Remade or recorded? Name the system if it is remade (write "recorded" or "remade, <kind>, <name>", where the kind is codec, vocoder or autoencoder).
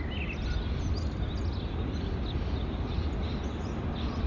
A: recorded